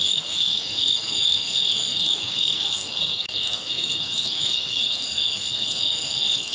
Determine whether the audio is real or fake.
fake